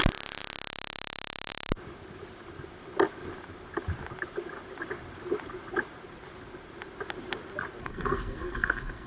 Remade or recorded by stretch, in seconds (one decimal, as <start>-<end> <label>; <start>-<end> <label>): 0.0-7.8 recorded; 7.8-9.1 remade